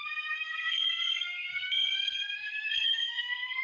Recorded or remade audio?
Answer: remade